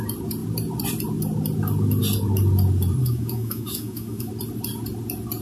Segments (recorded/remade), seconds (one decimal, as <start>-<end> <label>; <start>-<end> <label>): 0.0-3.0 recorded; 3.0-4.3 remade; 4.3-5.4 recorded